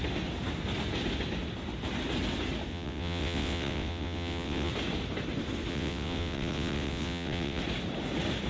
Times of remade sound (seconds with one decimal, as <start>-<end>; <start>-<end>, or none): 2.7-4.7; 5.7-7.6